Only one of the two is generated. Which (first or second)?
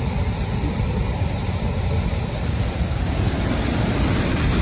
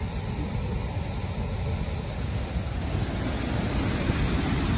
first